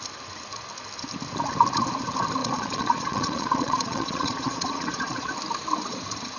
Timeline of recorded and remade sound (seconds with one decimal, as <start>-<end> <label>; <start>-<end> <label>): 0.0-2.4 recorded; 2.4-5.3 remade; 5.3-5.8 recorded; 5.8-6.4 remade